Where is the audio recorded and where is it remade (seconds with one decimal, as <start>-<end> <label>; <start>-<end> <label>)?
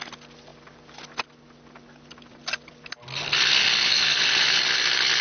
0.0-5.2 recorded